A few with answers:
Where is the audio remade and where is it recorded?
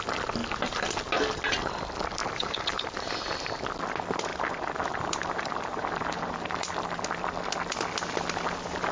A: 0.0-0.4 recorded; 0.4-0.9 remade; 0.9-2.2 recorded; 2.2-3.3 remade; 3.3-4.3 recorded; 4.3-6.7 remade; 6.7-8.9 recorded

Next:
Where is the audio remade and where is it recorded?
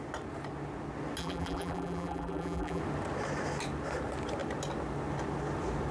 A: 0.0-1.2 recorded; 1.2-2.8 remade; 2.8-5.9 recorded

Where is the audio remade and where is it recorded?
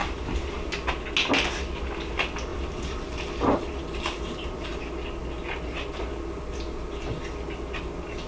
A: 0.0-0.7 remade; 0.7-2.5 recorded; 2.5-4.8 remade; 4.8-8.3 recorded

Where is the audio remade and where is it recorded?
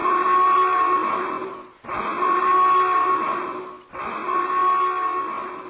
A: 0.0-3.4 remade; 3.4-5.7 recorded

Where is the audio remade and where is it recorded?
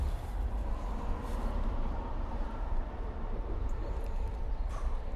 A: 0.0-1.3 recorded; 1.3-4.4 remade; 4.4-5.2 recorded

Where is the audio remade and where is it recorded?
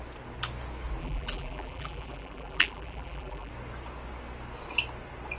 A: 0.0-1.0 recorded; 1.0-3.5 remade; 3.5-5.4 recorded